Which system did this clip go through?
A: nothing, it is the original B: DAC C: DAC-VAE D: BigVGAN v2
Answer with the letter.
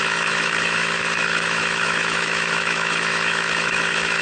C